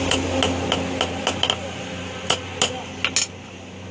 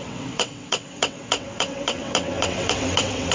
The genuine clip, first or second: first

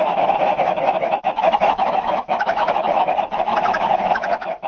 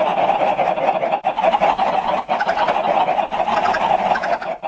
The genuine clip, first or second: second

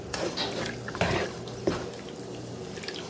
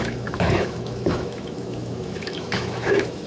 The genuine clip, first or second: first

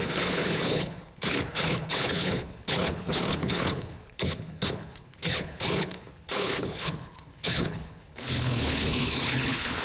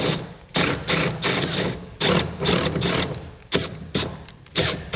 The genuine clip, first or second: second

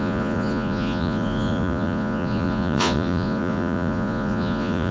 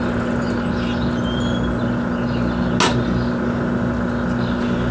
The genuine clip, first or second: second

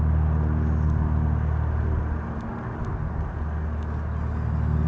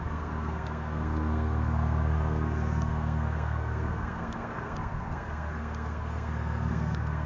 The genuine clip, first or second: first